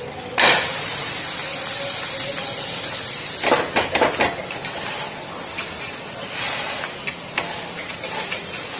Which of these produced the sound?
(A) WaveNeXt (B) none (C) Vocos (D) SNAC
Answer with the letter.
B